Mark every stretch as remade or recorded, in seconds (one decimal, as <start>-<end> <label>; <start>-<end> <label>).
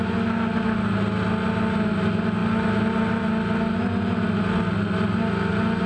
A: 0.0-5.9 recorded